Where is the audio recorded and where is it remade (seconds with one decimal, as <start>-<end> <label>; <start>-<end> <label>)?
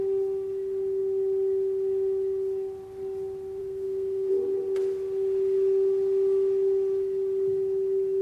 0.0-3.6 recorded; 3.6-4.3 remade; 4.3-8.2 recorded